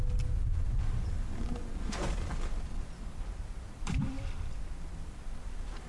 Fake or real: real